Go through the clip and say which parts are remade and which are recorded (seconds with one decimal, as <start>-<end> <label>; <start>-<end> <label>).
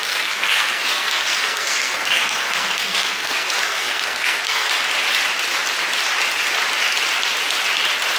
0.0-4.7 remade; 4.7-8.2 recorded